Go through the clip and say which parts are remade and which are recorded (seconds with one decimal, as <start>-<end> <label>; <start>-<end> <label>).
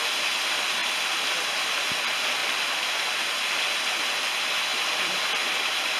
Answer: 0.0-0.8 recorded; 0.8-1.7 remade; 1.7-2.4 recorded; 2.4-3.2 remade; 3.2-4.7 recorded; 4.7-6.0 remade